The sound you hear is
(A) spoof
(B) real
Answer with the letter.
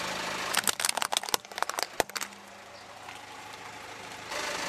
B